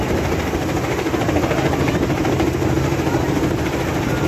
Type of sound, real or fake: real